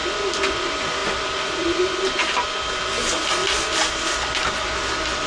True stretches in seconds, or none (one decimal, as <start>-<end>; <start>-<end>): 0.0-5.3